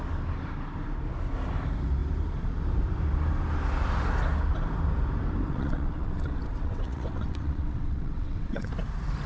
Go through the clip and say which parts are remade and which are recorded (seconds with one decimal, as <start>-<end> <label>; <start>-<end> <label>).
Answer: 0.0-5.5 recorded; 5.5-8.7 remade; 8.7-9.3 recorded